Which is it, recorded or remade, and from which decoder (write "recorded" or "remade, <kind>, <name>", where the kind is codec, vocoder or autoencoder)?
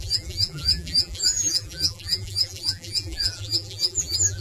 remade, vocoder, BigVGAN v2